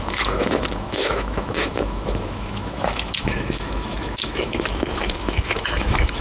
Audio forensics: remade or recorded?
remade